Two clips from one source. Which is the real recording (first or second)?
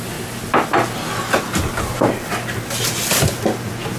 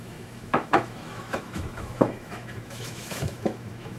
first